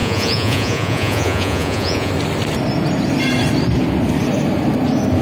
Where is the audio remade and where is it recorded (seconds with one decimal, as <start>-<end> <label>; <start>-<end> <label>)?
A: 0.0-2.1 remade; 2.1-5.2 recorded